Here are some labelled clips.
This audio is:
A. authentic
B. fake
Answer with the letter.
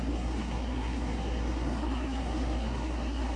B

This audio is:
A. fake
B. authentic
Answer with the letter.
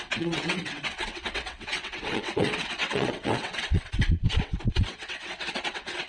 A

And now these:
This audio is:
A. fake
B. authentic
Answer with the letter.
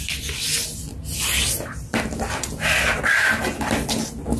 B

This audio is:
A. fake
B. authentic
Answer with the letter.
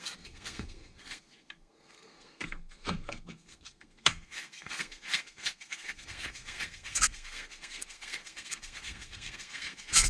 A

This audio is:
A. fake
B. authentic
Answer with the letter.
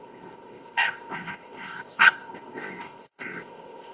A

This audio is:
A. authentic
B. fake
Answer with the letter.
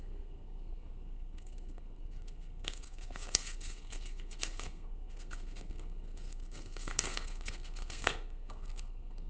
B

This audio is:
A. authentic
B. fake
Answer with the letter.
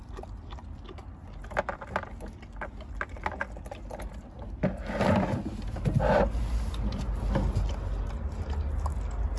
A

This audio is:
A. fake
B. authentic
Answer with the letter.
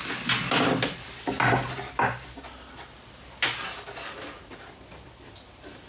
B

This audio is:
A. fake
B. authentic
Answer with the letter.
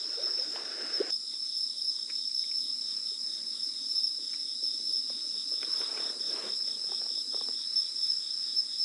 B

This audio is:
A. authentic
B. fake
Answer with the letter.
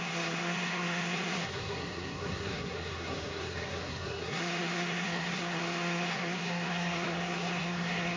B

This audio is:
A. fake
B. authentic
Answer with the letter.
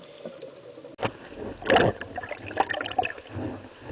B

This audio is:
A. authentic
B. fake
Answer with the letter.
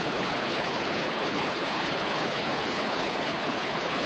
B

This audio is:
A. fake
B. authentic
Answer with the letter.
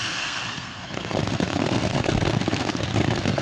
A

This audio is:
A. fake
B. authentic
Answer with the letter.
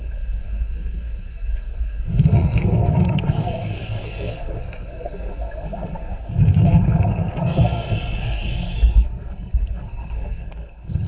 A